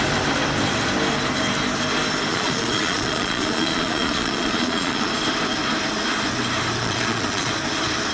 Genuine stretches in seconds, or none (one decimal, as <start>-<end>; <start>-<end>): 0.0-2.3; 5.1-6.8; 7.5-8.1